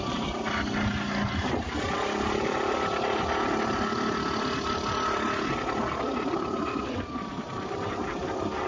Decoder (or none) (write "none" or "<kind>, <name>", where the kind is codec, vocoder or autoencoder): none